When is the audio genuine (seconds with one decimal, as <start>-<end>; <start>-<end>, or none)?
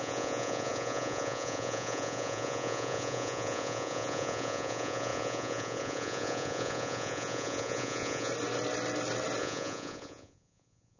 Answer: 8.3-9.4